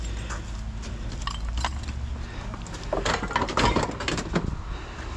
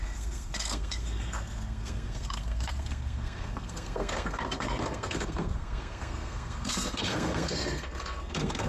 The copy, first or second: second